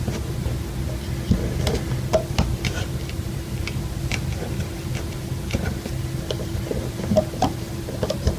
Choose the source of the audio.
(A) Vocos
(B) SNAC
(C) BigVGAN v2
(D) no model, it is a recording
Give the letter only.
C